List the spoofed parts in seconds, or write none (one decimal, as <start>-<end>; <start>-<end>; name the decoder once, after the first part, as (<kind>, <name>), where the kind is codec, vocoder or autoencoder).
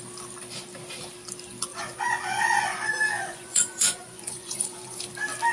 1.7-5.0 (vocoder, Vocos)